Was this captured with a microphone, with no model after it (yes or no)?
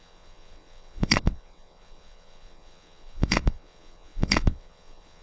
no